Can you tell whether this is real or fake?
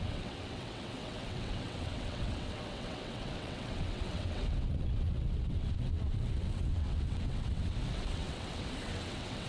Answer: fake